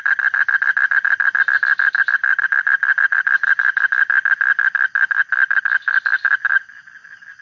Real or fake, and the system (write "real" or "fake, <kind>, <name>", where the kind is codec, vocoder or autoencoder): real